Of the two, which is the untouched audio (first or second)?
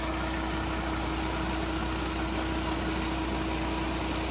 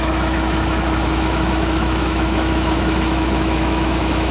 first